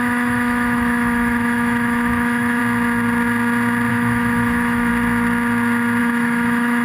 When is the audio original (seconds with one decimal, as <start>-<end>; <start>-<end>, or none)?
2.6-3.9; 4.9-6.0